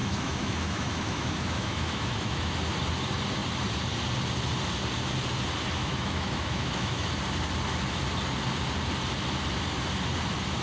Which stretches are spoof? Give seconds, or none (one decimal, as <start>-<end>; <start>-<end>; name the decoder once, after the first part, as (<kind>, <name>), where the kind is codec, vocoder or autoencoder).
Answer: 0.0-2.5 (autoencoder, DAC-VAE); 5.8-7.1